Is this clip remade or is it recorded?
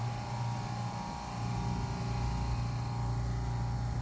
recorded